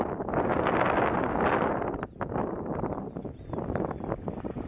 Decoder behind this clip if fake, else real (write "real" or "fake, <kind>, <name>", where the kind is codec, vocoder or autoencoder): real